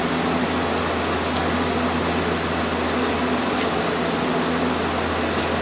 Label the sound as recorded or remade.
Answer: recorded